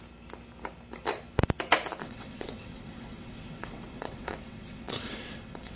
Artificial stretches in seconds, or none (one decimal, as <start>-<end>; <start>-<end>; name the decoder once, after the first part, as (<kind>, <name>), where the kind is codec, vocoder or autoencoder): 2.0-5.8 (vocoder, WaveNeXt)